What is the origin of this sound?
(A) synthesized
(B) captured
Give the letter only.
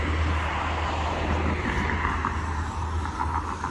B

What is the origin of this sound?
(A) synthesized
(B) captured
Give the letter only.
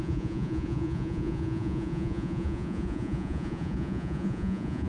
A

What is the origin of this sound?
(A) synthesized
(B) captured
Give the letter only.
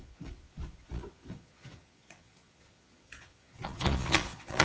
A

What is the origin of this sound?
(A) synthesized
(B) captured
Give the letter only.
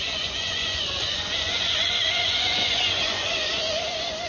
A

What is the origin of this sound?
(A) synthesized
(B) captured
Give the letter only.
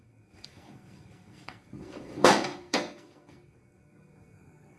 A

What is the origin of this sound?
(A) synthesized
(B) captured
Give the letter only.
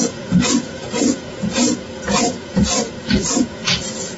A